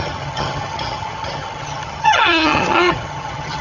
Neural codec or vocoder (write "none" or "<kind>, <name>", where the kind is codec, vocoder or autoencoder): vocoder, HiFi-GAN